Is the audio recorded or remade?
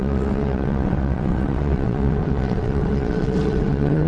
remade